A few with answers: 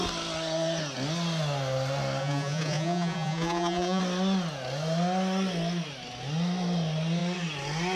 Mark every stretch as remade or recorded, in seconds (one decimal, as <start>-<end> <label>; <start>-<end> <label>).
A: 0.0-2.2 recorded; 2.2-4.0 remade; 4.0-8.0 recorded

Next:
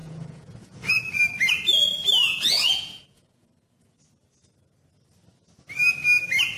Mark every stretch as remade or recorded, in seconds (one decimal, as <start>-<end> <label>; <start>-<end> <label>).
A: 0.0-0.9 remade; 0.9-2.2 recorded; 2.2-4.0 remade; 4.0-6.6 recorded

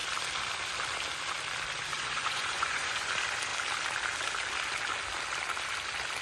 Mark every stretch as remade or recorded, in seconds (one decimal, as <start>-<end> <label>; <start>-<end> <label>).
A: 0.0-1.9 recorded; 1.9-3.1 remade; 3.1-6.2 recorded

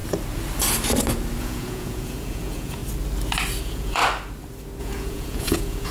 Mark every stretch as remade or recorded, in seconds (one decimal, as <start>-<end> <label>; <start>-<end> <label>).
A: 0.0-1.4 recorded; 1.4-2.8 remade; 2.8-3.6 recorded; 3.6-4.0 remade; 4.0-4.8 recorded; 4.8-5.9 remade

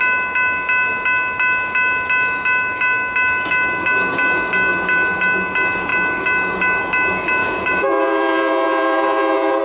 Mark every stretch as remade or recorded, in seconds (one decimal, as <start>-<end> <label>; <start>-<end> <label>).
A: 0.0-7.4 recorded; 7.4-9.6 remade

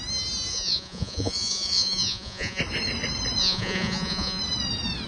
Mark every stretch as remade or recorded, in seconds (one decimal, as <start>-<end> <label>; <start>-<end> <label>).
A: 0.0-0.5 recorded; 0.5-2.6 remade; 2.6-3.4 recorded; 3.4-4.4 remade; 4.4-5.1 recorded